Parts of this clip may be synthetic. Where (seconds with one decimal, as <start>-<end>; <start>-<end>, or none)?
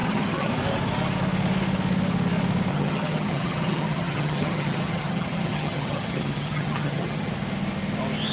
0.0-0.5; 2.7-7.3